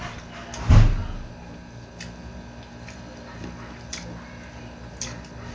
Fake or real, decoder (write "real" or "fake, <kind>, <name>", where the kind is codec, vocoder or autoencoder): real